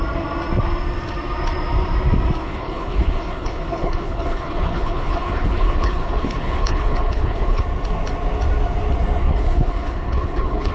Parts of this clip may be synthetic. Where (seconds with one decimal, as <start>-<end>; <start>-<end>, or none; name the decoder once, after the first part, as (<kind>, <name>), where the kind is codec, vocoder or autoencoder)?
2.4-7.6 (codec, HILCodec); 9.2-10.7